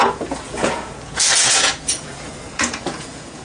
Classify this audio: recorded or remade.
remade